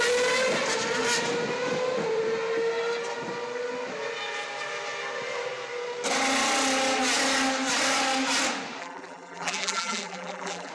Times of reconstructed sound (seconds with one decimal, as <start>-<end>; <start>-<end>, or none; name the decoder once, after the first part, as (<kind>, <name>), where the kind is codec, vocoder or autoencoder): 8.8-10.7 (vocoder, BigVGAN v2)